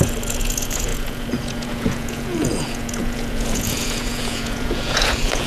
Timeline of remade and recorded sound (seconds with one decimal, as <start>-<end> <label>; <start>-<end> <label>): 0.0-5.5 remade